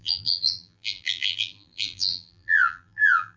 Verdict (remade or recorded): remade